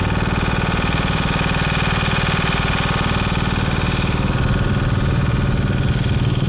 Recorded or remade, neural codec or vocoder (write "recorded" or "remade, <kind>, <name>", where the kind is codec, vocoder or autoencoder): recorded